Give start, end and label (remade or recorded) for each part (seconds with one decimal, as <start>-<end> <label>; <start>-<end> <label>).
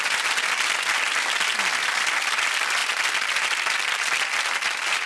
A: 0.0-5.1 recorded